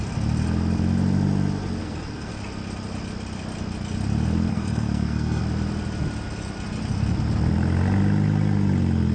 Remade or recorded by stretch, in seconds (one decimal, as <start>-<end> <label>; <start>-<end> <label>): 0.0-1.8 recorded; 1.8-2.3 remade; 2.3-4.5 recorded; 4.5-5.4 remade; 5.4-9.1 recorded